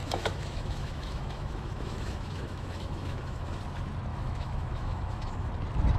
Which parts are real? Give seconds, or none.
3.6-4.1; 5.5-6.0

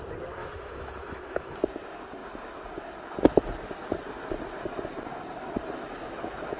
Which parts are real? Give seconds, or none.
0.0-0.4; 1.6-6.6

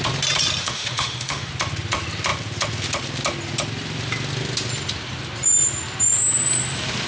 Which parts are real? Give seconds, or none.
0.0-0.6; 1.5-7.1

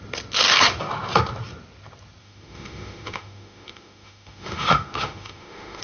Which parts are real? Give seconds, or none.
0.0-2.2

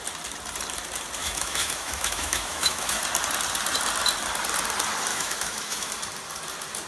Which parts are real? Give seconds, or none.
0.0-1.2; 3.0-5.1; 5.9-6.9

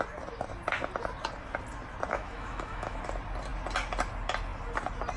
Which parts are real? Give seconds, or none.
0.0-2.1; 3.0-5.2

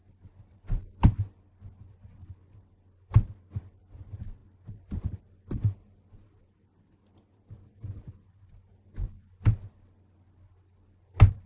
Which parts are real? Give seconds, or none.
0.0-11.5